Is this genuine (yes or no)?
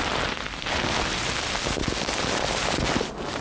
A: yes